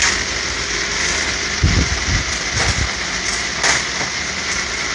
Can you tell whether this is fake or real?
real